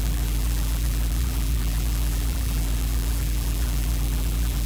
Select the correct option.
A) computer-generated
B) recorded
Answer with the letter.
A